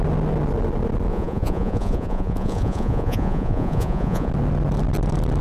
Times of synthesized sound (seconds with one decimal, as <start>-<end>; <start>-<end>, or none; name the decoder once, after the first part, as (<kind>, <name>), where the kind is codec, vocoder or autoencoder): 1.1-4.3 (vocoder, Vocos)